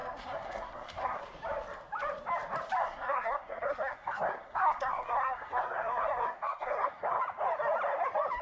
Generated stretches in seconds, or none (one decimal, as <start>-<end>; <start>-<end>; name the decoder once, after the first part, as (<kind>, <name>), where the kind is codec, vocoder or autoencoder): 0.0-1.2 (codec, SNAC); 2.8-7.2